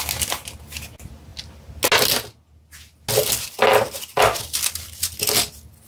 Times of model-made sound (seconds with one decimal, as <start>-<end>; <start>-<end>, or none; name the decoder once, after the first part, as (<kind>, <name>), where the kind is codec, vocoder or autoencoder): none